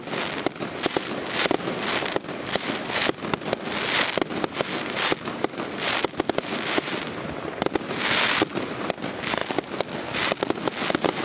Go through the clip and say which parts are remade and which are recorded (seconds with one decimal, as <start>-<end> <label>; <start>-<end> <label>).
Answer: 0.0-11.2 recorded